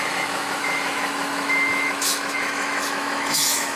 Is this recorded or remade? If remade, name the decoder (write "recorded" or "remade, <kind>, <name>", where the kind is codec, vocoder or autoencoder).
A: remade, autoencoder, DAC-VAE